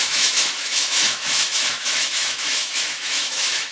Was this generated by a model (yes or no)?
yes